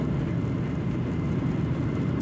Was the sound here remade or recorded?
recorded